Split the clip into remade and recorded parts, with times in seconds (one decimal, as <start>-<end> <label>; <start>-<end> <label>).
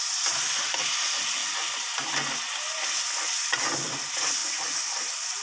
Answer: 0.0-5.4 recorded